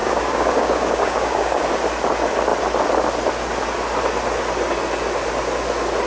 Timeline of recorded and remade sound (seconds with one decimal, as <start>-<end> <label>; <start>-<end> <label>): 0.0-1.6 remade; 1.6-6.1 recorded